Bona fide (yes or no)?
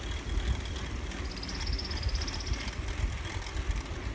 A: yes